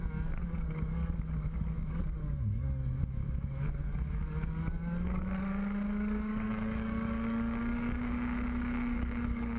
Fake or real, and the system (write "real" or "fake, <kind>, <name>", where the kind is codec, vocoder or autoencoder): fake, codec, DAC